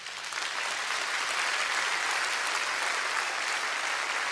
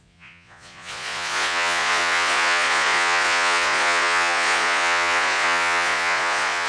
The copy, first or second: second